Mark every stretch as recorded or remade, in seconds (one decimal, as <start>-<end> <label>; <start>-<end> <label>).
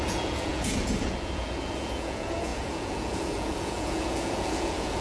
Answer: 0.0-5.0 remade